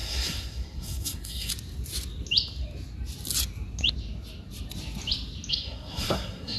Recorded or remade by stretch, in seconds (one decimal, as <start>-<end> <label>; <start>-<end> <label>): 0.0-1.5 remade; 1.5-5.5 recorded; 5.5-6.6 remade